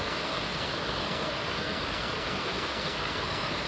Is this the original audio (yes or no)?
no